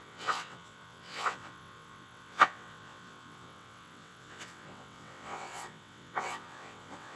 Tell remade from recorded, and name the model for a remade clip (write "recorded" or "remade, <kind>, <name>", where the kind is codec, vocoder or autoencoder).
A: remade, vocoder, WaveNeXt